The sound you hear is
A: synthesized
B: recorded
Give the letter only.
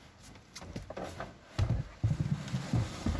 B